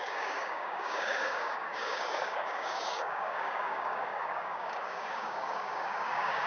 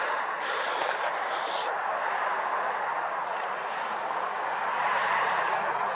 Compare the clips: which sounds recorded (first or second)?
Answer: second